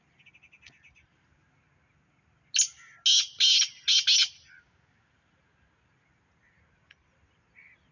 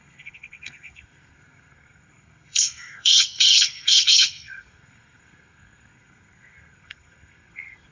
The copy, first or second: second